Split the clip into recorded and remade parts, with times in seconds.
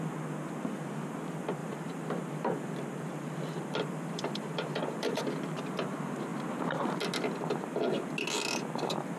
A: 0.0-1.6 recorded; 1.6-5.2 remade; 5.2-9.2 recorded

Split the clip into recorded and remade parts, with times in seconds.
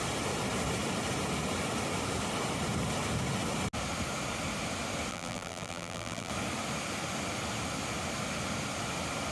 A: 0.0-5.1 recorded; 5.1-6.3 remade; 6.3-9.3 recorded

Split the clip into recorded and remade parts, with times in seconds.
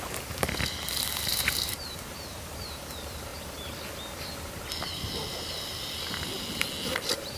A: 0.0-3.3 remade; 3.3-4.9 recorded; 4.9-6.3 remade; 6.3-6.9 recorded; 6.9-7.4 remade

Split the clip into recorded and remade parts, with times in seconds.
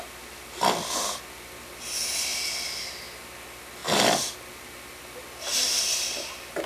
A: 0.0-6.7 recorded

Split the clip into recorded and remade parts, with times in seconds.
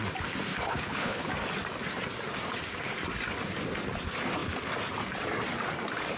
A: 0.0-0.5 recorded; 0.5-1.3 remade; 1.3-6.2 recorded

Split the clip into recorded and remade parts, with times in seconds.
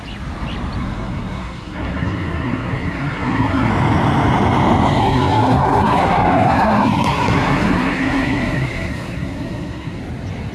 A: 0.0-0.8 recorded; 0.8-3.7 remade; 3.7-5.0 recorded; 5.0-10.0 remade; 10.0-10.5 recorded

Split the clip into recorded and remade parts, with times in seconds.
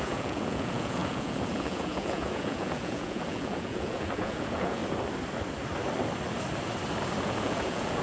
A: 0.0-4.8 remade; 4.8-7.2 recorded; 7.2-8.0 remade